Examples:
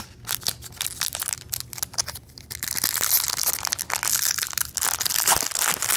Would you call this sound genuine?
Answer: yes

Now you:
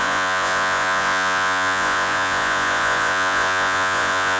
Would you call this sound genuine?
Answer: no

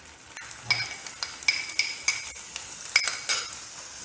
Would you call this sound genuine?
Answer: yes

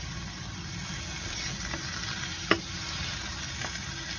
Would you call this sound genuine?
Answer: yes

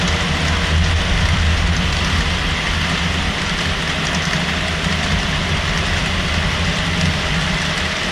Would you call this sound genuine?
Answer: yes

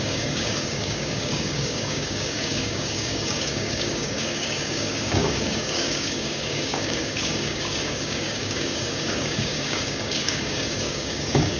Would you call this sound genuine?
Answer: no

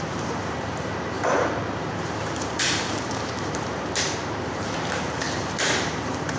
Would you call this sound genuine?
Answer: no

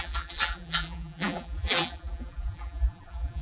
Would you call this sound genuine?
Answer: no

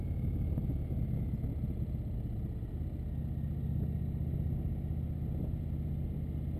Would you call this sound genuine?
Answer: yes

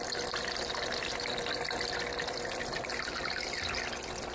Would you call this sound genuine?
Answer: yes